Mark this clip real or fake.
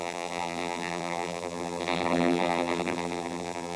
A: fake